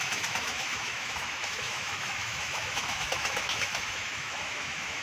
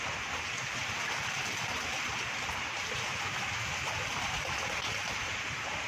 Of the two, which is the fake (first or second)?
first